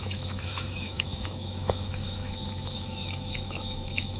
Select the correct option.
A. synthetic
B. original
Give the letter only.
A